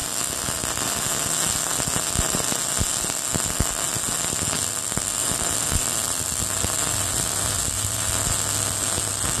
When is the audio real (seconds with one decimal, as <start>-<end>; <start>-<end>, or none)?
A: 0.0-5.2; 8.1-9.4